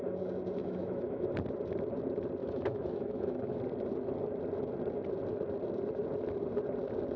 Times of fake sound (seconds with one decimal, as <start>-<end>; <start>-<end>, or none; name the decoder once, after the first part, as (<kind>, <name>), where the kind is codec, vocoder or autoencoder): 0.6-1.3 (autoencoder, DAC-VAE); 2.4-3.6